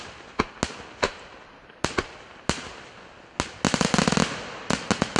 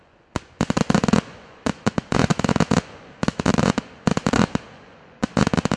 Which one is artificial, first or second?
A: second